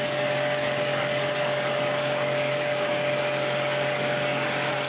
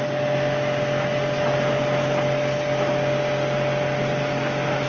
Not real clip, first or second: first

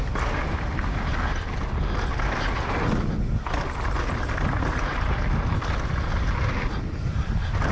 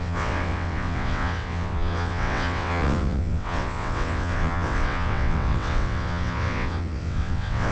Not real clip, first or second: second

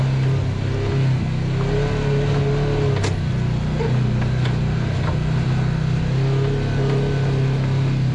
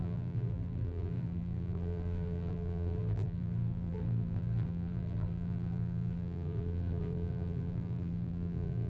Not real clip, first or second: second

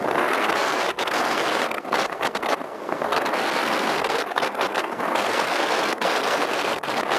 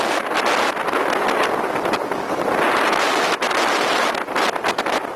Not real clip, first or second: first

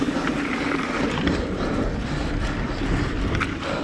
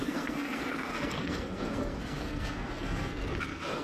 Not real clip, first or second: second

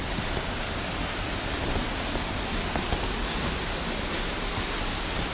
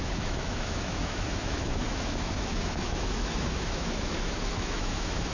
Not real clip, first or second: second